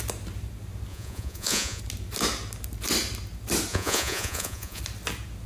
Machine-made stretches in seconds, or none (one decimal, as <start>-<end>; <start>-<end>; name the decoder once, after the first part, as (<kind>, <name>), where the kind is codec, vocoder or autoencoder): 0.9-1.8 (vocoder, Vocos); 3.7-4.8